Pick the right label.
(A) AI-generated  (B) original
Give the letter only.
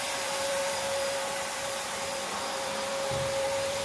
A